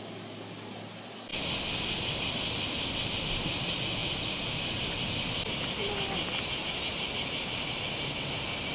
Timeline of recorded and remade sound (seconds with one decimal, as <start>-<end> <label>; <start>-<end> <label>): 0.0-8.7 recorded